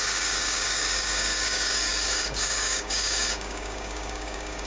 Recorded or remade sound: remade